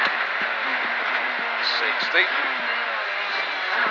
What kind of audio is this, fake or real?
real